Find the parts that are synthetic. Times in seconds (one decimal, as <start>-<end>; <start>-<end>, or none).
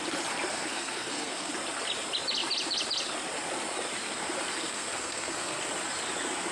0.5-1.5; 4.5-5.6